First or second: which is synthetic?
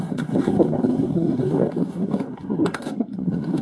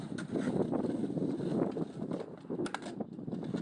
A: first